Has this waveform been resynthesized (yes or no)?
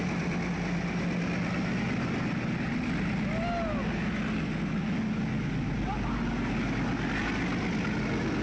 no